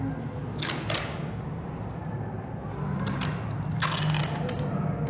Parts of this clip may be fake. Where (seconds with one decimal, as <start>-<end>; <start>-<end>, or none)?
none